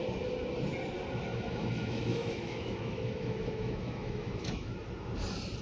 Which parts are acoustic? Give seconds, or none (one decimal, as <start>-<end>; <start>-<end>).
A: 0.0-1.3; 4.7-5.6